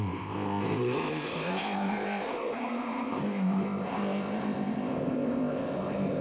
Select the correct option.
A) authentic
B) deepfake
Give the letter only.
B